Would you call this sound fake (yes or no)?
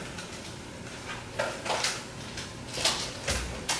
no